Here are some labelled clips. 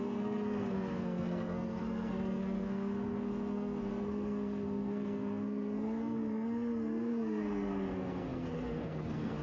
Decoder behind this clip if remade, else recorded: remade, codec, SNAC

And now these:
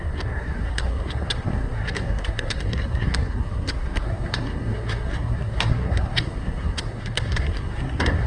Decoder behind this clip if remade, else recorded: remade, codec, SNAC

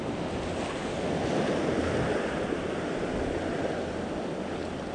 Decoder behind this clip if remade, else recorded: recorded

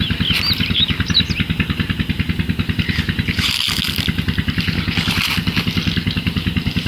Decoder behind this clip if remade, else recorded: recorded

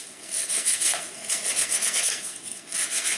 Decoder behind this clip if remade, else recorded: remade, codec, SNAC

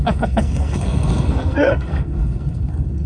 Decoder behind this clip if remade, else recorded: remade, codec, SNAC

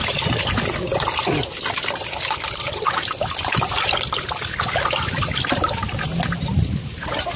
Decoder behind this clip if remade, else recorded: recorded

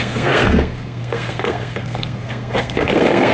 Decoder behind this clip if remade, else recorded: remade, codec, SNAC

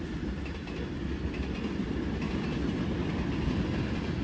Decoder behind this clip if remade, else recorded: recorded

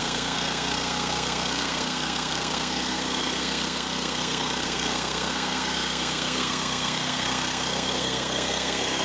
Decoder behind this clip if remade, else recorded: remade, codec, SNAC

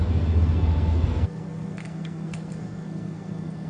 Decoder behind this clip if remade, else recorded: remade, codec, SNAC